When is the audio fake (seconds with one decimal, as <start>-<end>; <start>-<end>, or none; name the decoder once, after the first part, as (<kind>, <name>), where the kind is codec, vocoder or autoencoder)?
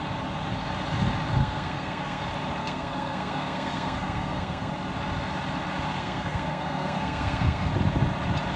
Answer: 1.4-2.2 (codec, SNAC); 2.6-4.7; 6.0-7.7